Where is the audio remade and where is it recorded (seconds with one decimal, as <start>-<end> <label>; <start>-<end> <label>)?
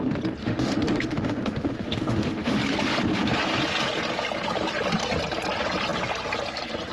0.0-0.4 recorded; 0.4-2.6 remade; 2.6-6.9 recorded